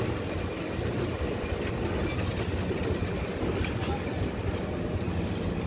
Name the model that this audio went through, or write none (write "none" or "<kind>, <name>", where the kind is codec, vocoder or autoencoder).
none